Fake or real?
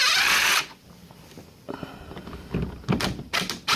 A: real